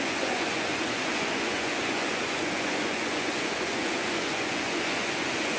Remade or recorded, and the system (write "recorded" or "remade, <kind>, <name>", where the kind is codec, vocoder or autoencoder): remade, vocoder, Vocos